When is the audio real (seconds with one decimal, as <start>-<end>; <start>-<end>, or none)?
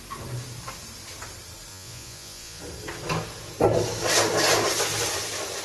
0.0-1.7; 2.6-5.6